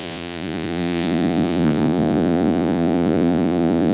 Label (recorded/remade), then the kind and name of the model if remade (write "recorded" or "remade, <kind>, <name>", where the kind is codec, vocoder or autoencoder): remade, vocoder, Vocos